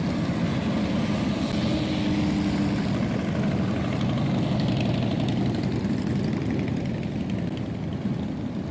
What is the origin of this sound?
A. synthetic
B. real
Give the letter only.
B